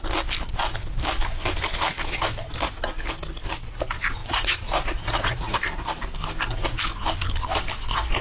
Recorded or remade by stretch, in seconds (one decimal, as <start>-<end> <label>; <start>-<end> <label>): 0.0-4.2 recorded; 4.2-5.6 remade; 5.6-8.2 recorded